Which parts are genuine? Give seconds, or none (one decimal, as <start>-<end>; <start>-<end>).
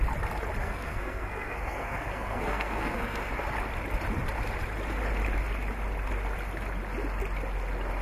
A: 0.0-0.6; 3.3-8.0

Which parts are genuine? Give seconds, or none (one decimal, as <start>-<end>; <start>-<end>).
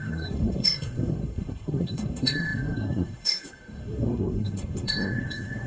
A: none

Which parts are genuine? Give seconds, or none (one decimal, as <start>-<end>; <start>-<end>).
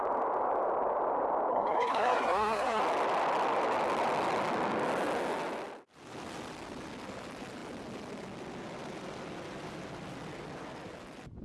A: 0.0-1.5; 2.8-11.4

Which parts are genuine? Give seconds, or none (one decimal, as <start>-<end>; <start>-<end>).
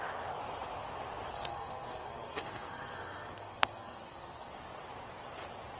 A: 0.0-1.3; 4.5-5.8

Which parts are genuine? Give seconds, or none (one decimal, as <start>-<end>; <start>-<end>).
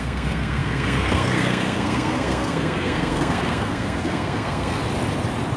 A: 4.8-5.6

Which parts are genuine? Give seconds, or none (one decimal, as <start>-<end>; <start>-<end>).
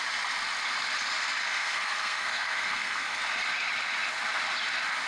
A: 0.0-1.5; 3.2-5.1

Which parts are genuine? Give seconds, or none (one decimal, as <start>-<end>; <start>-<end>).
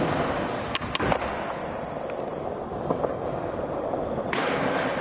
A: 0.0-5.0